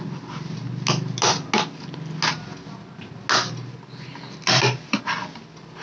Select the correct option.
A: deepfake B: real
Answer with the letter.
B